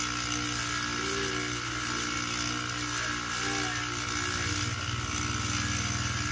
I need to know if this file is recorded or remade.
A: recorded